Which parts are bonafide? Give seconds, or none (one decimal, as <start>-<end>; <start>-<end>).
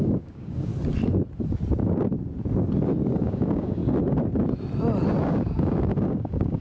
0.7-3.2; 3.8-5.2